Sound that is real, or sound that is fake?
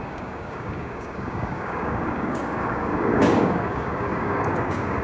fake